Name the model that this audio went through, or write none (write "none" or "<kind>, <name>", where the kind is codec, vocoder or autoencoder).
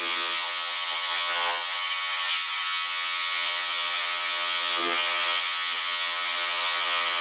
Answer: vocoder, HiFi-GAN